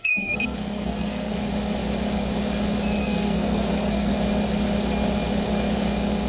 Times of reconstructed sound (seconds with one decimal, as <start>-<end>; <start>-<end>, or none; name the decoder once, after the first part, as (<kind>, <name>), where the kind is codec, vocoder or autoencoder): 0.0-1.3 (codec, SNAC); 3.0-4.1